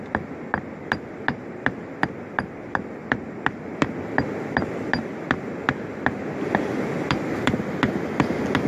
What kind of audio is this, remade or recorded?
recorded